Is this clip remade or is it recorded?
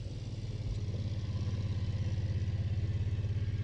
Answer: recorded